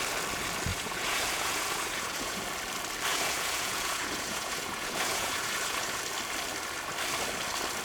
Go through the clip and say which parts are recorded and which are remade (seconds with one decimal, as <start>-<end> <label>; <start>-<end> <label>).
0.0-0.7 recorded; 0.7-2.4 remade; 2.4-3.1 recorded; 3.1-6.0 remade; 6.0-7.8 recorded